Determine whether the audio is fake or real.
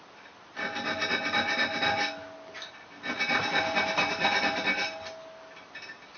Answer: real